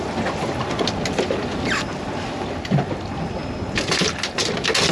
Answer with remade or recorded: recorded